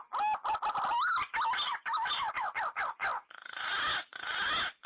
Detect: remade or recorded recorded